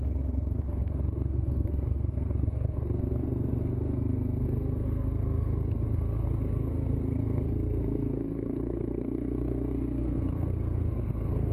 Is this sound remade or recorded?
remade